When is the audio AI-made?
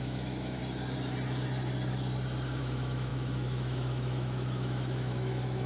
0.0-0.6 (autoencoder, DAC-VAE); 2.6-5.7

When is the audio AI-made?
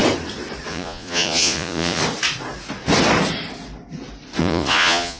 0.7-2.0 (vocoder, Vocos); 4.4-5.2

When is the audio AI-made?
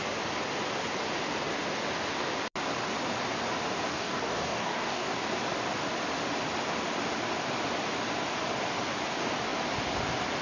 3.9-5.1 (codec, DAC)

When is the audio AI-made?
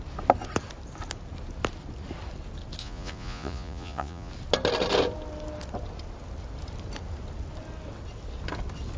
2.8-4.3 (vocoder, Vocos)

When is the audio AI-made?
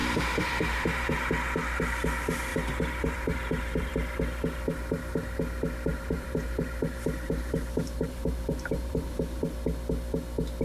0.0-1.3 (vocoder, BigVGAN v2); 2.5-3.9; 5.9-9.4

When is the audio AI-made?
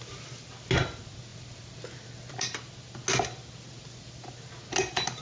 none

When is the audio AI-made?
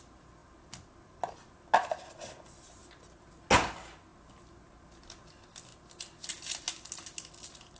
none